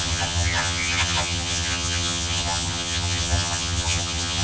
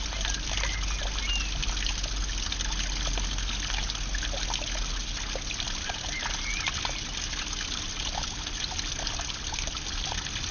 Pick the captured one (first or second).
second